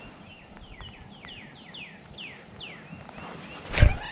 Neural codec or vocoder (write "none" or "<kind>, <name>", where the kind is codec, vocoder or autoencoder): none